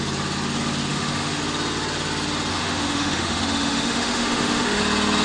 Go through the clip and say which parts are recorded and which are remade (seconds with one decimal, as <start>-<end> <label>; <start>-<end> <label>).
0.0-0.9 recorded; 0.9-1.4 remade; 1.4-2.5 recorded; 2.5-4.8 remade; 4.8-5.2 recorded